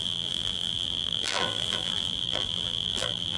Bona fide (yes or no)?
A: no